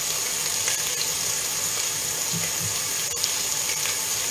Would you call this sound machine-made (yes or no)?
no